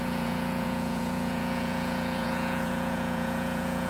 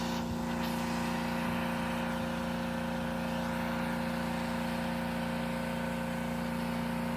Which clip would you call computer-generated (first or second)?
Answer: first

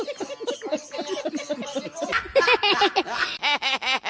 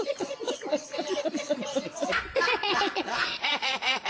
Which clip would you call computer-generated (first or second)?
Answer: second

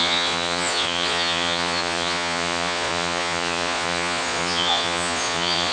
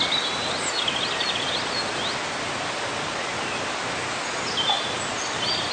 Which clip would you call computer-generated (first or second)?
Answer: first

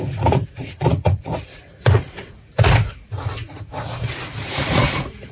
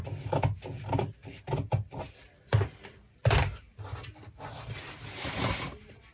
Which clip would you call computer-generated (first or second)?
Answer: first